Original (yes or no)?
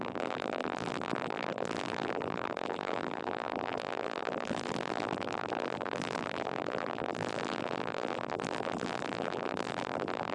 no